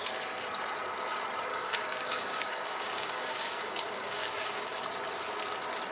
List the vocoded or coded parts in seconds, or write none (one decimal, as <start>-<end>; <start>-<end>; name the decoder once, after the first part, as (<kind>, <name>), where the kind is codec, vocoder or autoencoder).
1.5-4.8 (codec, DAC)